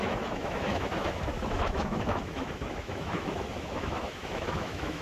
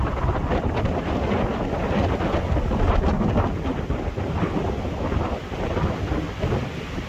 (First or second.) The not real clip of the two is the first